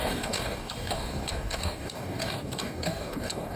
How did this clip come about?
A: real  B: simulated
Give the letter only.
B